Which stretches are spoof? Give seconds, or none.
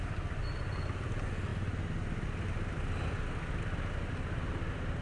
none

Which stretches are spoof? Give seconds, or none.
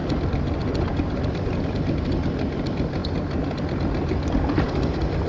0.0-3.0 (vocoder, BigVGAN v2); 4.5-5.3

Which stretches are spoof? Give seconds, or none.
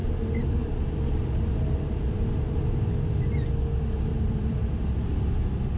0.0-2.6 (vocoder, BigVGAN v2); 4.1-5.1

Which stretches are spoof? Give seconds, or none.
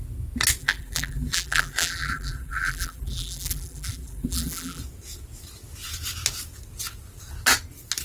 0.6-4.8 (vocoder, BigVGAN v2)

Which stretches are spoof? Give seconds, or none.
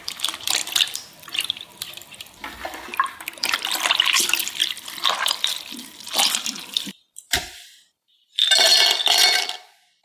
0.0-8.7 (vocoder, BigVGAN v2)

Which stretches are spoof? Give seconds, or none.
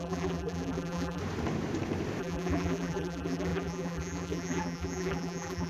0.0-1.2 (vocoder, BigVGAN v2); 2.2-5.7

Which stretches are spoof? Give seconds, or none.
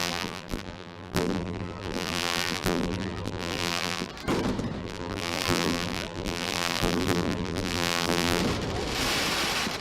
0.0-4.1 (vocoder, BigVGAN v2); 4.8-8.4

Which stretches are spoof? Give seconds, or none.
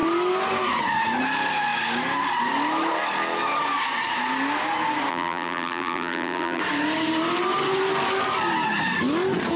5.1-6.6 (vocoder, BigVGAN v2)